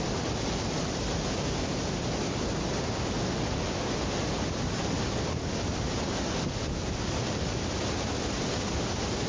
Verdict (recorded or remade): recorded